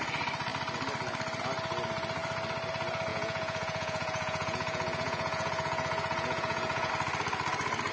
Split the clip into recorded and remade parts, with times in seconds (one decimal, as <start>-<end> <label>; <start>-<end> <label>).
0.0-3.1 recorded; 3.1-6.9 remade; 6.9-7.9 recorded